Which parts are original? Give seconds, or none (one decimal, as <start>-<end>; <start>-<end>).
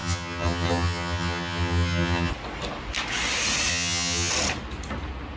2.3-3.7; 4.3-5.4